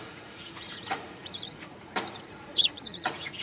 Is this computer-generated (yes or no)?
yes